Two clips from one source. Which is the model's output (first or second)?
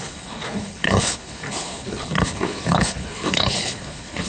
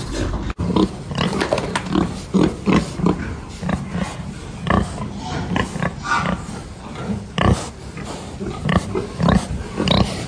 first